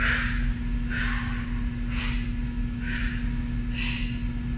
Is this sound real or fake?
real